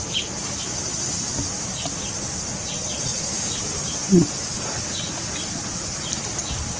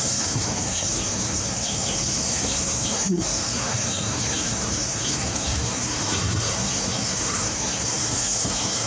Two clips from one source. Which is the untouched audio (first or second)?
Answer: first